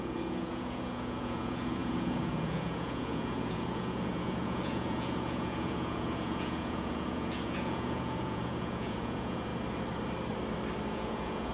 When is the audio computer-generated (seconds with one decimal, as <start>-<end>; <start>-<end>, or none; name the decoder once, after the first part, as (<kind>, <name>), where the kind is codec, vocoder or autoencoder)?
0.0-9.5 (vocoder, Vocos); 10.9-11.5